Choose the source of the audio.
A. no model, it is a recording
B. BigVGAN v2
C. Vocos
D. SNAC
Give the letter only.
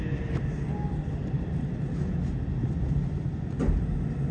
A